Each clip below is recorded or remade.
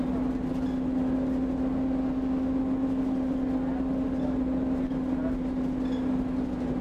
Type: recorded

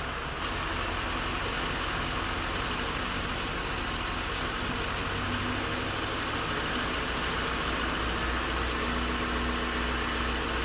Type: recorded